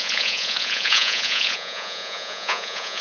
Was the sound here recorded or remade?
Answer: remade